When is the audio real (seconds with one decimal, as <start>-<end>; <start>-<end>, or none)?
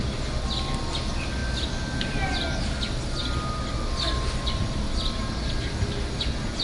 0.0-6.6